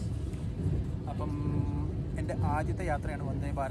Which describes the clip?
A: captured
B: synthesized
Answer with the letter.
A